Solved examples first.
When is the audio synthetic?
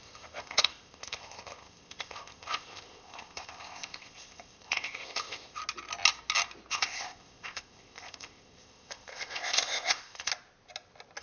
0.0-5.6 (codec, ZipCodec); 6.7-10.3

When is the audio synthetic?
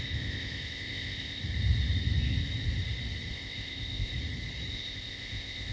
0.0-1.4 (codec, ZipCodec); 3.3-4.1; 4.7-5.7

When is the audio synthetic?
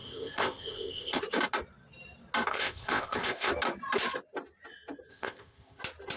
0.0-1.2 (codec, ZipCodec); 2.5-3.5; 5.1-5.8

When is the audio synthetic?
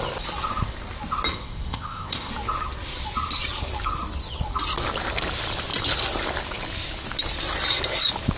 1.3-2.3 (codec, ZipCodec)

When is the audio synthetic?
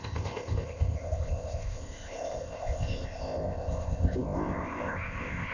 0.0-5.5 (codec, ZipCodec)